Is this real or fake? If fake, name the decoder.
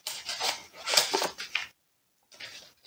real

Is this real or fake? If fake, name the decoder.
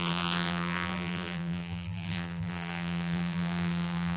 fake, vocoder, BigVGAN v2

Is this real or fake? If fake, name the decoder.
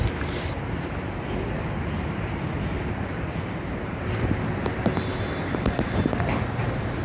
fake, vocoder, BigVGAN v2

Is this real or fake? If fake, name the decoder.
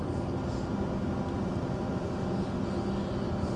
real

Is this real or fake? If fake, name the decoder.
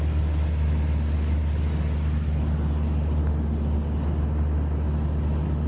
real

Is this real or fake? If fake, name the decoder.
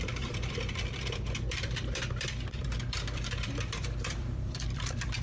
fake, vocoder, BigVGAN v2